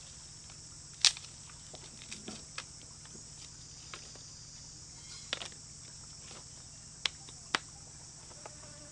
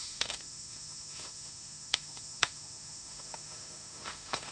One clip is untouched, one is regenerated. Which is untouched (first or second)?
first